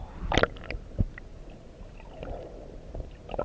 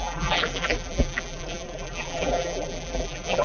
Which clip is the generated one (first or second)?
second